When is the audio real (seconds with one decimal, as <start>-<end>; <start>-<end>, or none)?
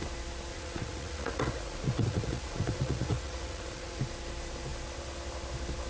0.0-0.5; 4.0-5.9